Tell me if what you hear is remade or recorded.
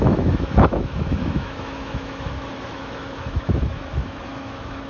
remade